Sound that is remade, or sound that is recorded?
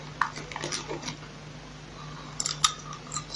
recorded